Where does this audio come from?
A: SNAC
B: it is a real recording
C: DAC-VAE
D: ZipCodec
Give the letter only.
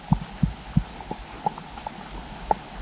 B